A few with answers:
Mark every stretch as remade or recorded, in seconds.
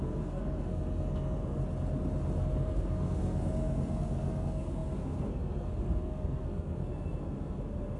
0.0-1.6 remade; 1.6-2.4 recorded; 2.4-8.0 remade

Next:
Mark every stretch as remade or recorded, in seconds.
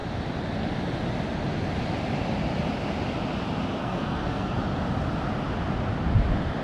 0.0-3.8 recorded; 3.8-4.6 remade; 4.6-6.6 recorded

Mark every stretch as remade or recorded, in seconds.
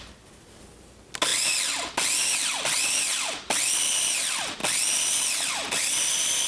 0.0-6.5 recorded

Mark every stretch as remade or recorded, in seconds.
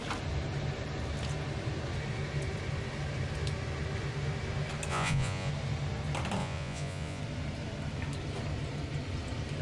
0.0-4.9 recorded; 4.9-5.5 remade; 5.5-6.4 recorded; 6.4-7.2 remade; 7.2-9.6 recorded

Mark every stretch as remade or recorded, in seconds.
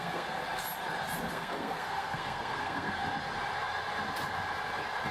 0.0-0.4 remade; 0.4-1.3 recorded; 1.3-3.0 remade; 3.0-5.1 recorded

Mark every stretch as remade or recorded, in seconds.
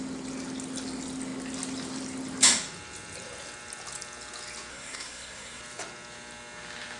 0.0-4.7 recorded; 4.7-5.6 remade; 5.6-7.0 recorded